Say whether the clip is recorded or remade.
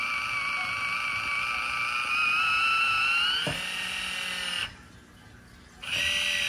recorded